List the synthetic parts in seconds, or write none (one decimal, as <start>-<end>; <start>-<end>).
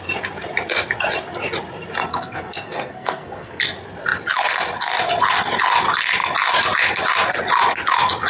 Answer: 2.1-3.6